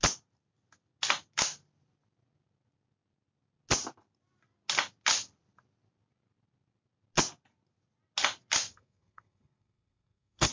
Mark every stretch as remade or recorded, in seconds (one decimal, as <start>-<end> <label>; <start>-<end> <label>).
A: 0.0-8.7 recorded; 8.7-10.5 remade